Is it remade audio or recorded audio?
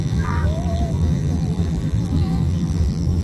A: remade